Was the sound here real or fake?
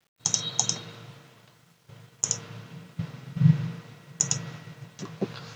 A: real